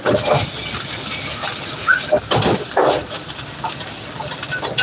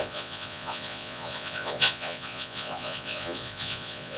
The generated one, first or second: second